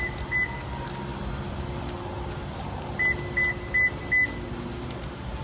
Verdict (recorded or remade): recorded